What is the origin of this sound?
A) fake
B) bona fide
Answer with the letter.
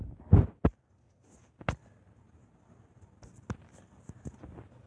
B